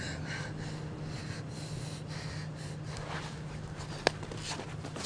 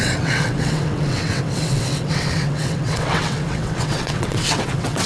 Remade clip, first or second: second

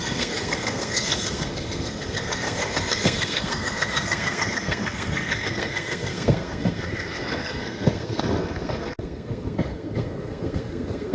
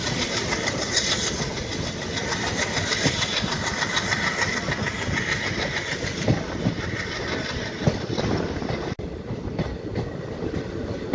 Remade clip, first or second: first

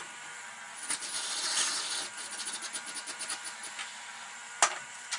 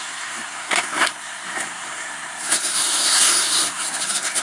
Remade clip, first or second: second